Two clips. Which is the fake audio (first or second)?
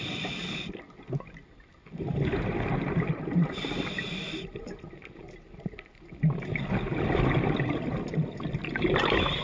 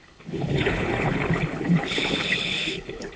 second